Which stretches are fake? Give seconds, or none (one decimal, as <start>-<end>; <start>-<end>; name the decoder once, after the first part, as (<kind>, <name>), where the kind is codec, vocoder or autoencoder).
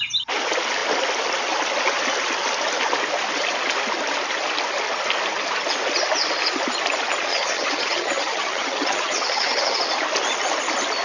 7.3-9.8 (vocoder, HiFi-GAN)